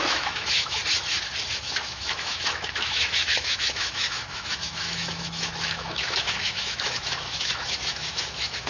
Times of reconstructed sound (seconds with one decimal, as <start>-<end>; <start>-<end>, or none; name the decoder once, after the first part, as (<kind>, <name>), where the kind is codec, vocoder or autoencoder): 0.0-0.8 (autoencoder, DAC-VAE); 1.5-8.7